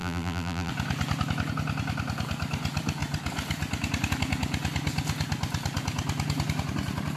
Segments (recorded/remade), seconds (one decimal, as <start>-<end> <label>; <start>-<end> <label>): 0.0-0.7 remade; 0.7-7.2 recorded